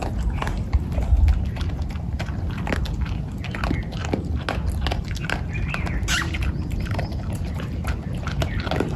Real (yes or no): yes